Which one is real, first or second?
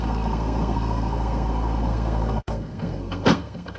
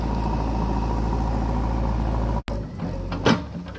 second